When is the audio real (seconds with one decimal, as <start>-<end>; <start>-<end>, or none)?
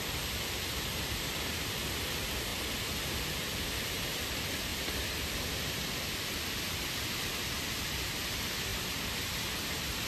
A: 2.5-3.2